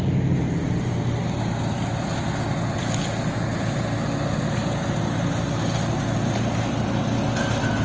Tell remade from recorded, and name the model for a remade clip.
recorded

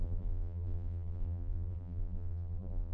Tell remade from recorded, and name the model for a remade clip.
remade, vocoder, BigVGAN v2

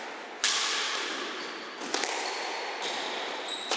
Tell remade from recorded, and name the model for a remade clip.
recorded